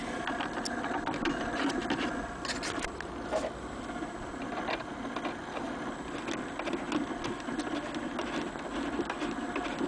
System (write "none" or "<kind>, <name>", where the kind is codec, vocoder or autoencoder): none